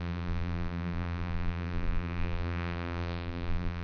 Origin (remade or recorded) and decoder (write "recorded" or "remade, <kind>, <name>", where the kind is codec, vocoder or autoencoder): remade, vocoder, BigVGAN v2